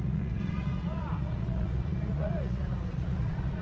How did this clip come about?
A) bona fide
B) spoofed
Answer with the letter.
B